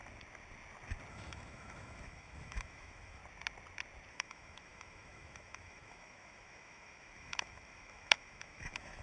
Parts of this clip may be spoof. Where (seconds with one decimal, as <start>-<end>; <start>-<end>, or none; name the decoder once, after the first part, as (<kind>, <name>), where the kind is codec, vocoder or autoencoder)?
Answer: 1.1-3.2 (autoencoder, DAC-VAE); 4.1-9.0